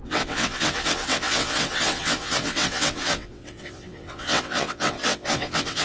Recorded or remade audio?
remade